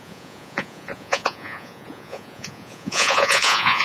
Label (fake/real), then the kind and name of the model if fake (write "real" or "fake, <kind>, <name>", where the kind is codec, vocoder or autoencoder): fake, vocoder, Vocos